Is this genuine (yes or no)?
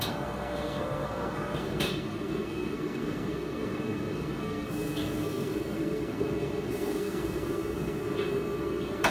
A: no